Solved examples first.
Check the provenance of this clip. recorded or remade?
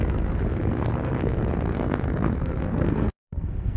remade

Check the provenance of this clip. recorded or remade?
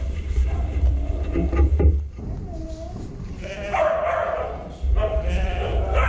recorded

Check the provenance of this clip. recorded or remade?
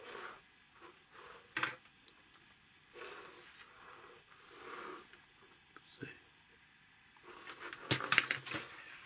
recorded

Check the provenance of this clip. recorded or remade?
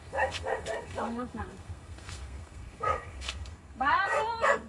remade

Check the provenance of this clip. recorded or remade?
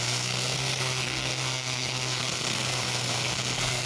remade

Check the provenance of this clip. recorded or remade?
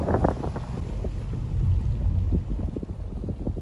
recorded